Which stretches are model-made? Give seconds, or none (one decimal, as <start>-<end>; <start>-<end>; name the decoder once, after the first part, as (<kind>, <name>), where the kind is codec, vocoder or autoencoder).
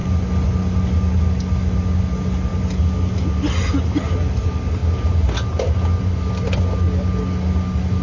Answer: none